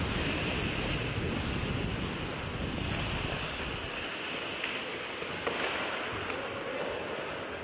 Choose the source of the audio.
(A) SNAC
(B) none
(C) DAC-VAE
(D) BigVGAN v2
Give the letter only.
B